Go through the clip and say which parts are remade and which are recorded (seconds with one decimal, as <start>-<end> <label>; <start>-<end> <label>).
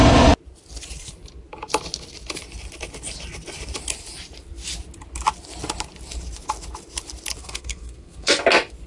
0.0-7.4 recorded; 7.4-8.3 remade; 8.3-8.9 recorded